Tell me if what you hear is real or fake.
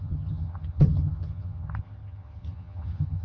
fake